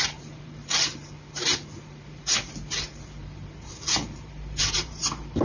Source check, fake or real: fake